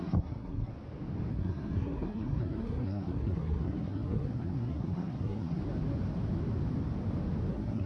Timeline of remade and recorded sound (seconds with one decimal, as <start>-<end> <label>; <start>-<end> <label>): 0.0-0.7 remade; 0.7-1.3 recorded; 1.3-5.6 remade; 5.6-7.5 recorded; 7.5-7.9 remade